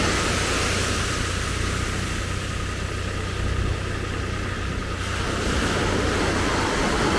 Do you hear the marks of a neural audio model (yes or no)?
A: no